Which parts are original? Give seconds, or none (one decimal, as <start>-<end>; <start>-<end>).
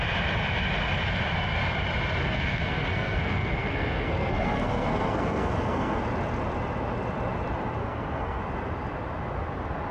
0.0-2.2; 6.0-7.8; 8.4-9.9